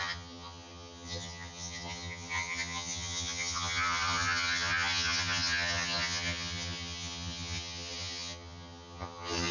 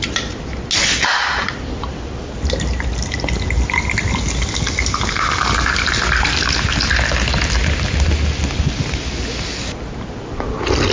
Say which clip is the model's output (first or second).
first